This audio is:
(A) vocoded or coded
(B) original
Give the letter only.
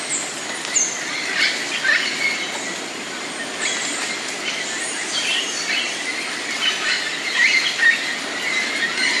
B